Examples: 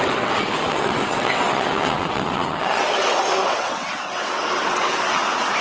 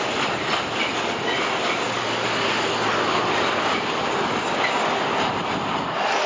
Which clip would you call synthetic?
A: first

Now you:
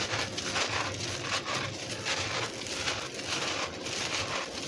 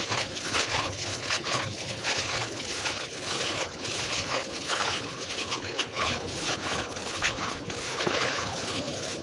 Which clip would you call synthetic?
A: second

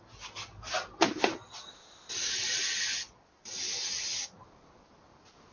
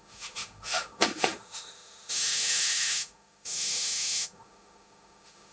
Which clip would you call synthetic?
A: second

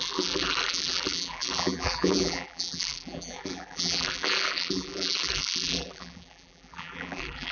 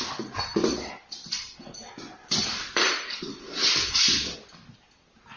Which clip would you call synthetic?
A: first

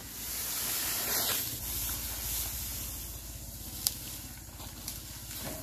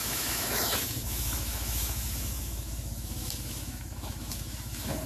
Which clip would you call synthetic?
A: second